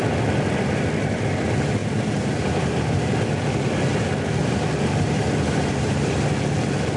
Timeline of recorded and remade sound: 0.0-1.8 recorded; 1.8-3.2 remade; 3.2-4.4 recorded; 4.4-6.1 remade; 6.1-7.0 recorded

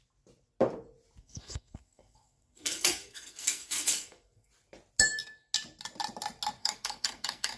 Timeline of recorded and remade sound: 0.0-1.2 recorded; 1.2-4.5 remade; 4.5-6.6 recorded; 6.6-7.6 remade